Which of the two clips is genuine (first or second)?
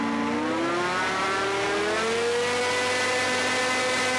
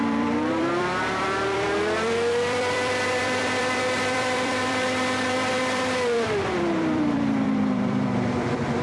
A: first